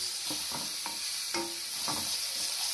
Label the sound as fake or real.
real